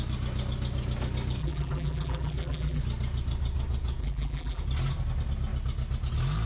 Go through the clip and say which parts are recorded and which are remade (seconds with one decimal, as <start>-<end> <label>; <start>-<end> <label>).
0.0-1.4 recorded; 1.4-2.8 remade; 2.8-4.0 recorded; 4.0-4.6 remade; 4.6-6.5 recorded